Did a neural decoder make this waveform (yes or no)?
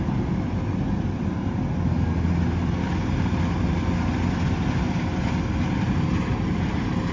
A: no